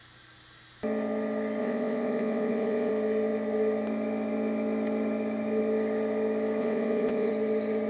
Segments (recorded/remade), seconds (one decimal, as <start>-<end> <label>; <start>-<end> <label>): 0.0-1.6 recorded; 1.6-2.9 remade; 2.9-6.6 recorded; 6.6-7.3 remade; 7.3-7.9 recorded